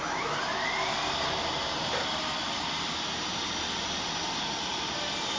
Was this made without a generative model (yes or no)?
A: yes